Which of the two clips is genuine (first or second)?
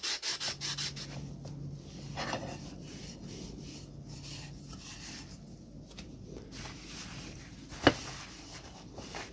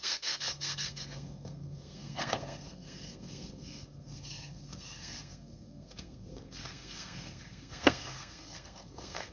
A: first